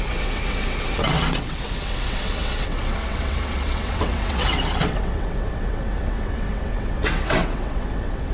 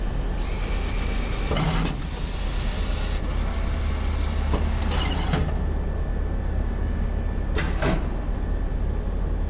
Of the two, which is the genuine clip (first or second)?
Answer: second